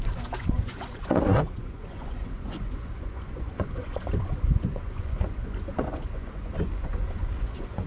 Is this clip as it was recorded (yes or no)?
no